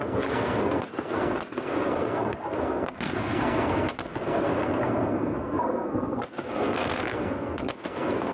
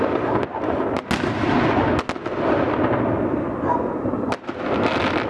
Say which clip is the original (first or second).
second